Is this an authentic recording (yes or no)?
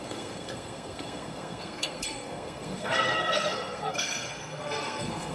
no